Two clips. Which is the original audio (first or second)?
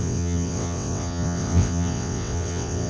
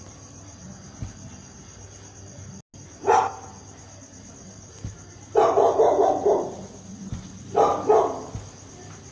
second